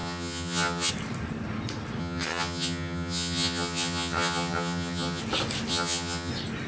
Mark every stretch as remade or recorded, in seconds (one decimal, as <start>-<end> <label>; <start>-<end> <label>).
0.0-0.9 remade; 0.9-2.0 recorded; 2.0-5.2 remade; 5.2-5.7 recorded; 5.7-6.3 remade; 6.3-6.7 recorded